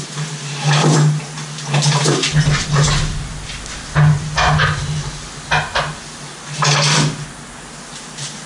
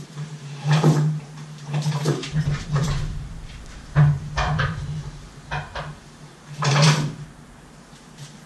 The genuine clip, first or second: first